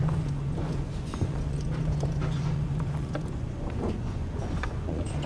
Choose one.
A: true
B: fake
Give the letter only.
B